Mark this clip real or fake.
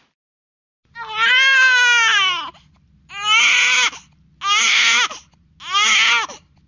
real